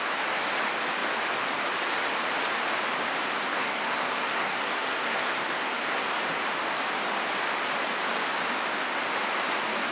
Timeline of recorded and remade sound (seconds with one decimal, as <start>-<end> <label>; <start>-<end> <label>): 0.0-3.5 recorded; 3.5-6.1 remade; 6.1-9.9 recorded